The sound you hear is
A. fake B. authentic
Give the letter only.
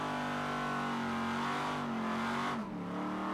B